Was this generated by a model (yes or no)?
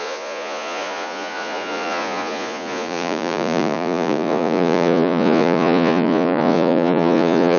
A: yes